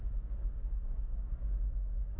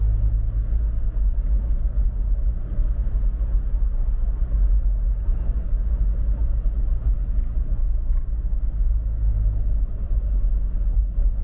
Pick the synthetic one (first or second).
first